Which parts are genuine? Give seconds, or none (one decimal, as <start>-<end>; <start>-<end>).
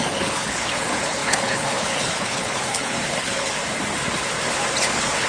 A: 3.6-4.8